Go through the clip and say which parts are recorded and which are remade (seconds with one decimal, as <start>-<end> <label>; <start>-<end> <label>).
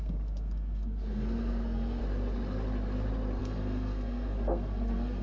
0.0-2.0 remade; 2.0-3.4 recorded; 3.4-5.2 remade